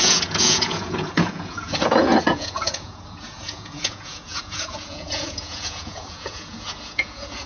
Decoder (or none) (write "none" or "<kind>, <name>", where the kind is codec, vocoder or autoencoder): vocoder, Vocos